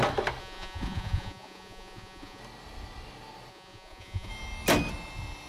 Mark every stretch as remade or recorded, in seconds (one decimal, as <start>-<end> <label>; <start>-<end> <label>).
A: 0.0-0.4 recorded; 0.4-2.4 remade; 2.4-3.5 recorded; 3.5-4.3 remade; 4.3-5.5 recorded